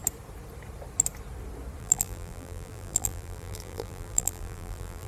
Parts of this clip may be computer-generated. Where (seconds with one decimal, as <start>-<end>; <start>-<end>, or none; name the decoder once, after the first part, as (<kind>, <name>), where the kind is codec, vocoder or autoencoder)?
1.8-5.1 (vocoder, BigVGAN v2)